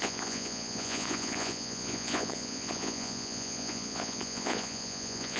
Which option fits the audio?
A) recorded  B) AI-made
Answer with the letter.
B